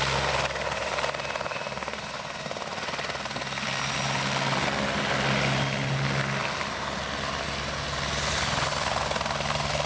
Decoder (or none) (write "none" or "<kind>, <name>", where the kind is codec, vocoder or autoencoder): none